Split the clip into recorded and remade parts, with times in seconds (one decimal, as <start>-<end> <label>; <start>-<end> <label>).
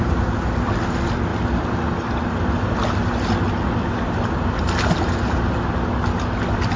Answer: 0.0-6.8 recorded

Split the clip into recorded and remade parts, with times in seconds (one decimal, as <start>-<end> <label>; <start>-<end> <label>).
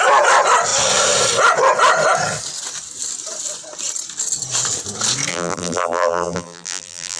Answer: 0.0-5.3 recorded; 5.3-7.2 remade